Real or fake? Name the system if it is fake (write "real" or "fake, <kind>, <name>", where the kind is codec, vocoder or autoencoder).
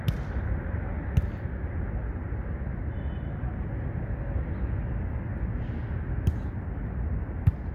real